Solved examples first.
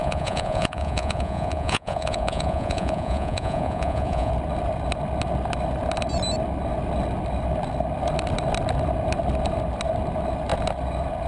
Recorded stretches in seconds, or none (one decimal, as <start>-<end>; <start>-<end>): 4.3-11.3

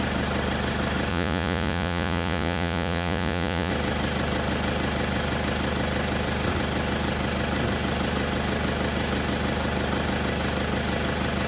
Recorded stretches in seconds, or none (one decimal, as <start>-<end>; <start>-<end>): 0.0-1.1; 3.7-11.5

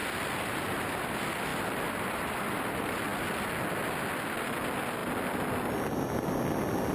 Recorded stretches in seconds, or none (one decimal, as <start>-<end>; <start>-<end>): 0.0-6.9

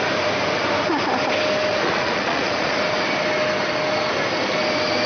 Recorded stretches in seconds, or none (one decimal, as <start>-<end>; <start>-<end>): 0.0-1.7; 2.8-5.1

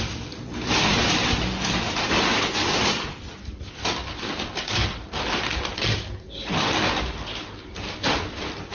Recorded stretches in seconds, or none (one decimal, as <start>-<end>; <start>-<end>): 0.0-8.7

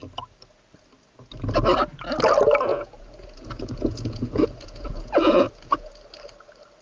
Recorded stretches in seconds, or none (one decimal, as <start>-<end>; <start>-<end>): 0.0-2.7; 5.9-6.8

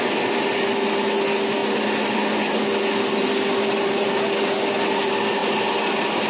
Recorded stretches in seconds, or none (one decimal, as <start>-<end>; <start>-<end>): 0.0-6.3